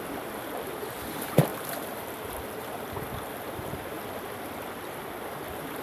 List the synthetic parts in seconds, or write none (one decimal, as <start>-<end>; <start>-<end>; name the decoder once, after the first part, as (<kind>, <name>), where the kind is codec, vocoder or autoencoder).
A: 1.5-5.0 (vocoder, BigVGAN v2)